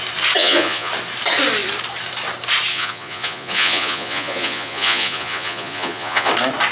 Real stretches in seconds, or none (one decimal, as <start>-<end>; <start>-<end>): 0.0-0.4; 0.9-2.7; 6.3-6.7